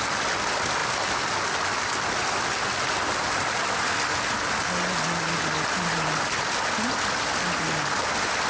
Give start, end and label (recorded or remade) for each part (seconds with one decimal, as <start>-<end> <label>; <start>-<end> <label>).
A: 0.0-8.5 recorded